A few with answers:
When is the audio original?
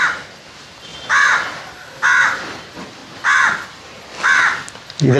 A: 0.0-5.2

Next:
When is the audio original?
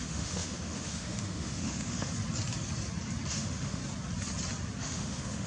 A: 2.1-3.3; 3.8-4.8